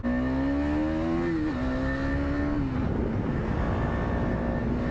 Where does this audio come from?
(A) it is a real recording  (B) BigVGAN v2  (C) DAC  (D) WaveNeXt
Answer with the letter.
A